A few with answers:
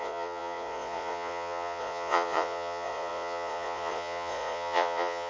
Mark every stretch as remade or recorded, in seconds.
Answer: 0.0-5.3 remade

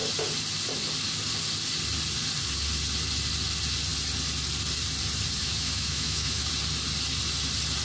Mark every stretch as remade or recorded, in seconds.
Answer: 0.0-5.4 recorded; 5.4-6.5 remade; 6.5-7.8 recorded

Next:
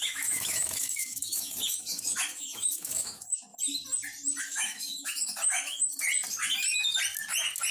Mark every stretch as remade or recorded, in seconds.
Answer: 0.0-3.5 remade; 3.5-4.4 recorded; 4.4-5.9 remade; 5.9-7.7 recorded

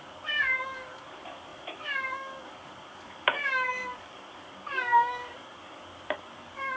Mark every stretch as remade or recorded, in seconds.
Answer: 0.0-6.8 remade

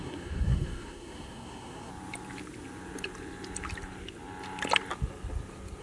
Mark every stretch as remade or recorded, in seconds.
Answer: 0.0-1.9 remade; 1.9-5.8 recorded

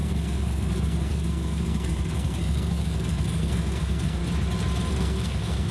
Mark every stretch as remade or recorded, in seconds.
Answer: 0.0-4.2 remade; 4.2-4.9 recorded; 4.9-5.7 remade